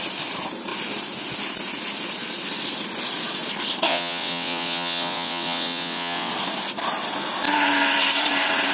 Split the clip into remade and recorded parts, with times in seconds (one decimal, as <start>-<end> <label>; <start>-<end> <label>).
0.0-3.9 recorded; 3.9-6.3 remade; 6.3-8.7 recorded